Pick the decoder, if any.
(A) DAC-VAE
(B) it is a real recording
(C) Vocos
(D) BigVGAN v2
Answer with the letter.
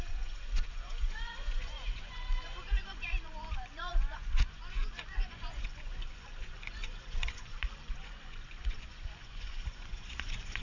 C